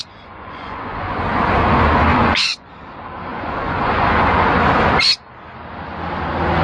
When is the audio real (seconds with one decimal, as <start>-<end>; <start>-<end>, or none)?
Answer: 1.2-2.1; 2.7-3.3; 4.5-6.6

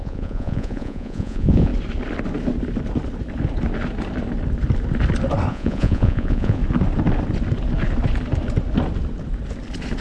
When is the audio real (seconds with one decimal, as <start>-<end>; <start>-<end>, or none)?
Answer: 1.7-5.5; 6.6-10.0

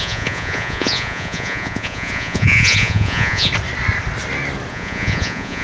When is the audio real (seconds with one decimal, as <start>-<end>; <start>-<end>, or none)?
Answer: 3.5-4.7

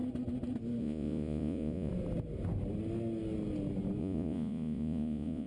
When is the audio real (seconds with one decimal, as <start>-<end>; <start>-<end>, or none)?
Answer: 0.0-0.8; 1.9-4.0

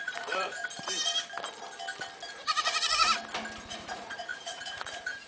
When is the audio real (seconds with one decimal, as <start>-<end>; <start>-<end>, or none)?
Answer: 0.6-2.3; 3.1-3.7

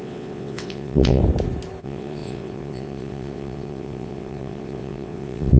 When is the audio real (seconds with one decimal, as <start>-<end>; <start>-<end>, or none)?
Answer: 1.2-1.8

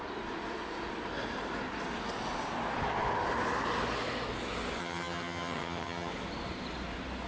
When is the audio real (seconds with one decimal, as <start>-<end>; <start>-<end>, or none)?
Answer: 0.0-4.8; 6.1-7.3

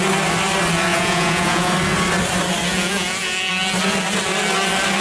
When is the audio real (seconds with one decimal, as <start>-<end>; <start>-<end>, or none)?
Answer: 0.0-0.9; 1.7-2.7; 3.5-5.0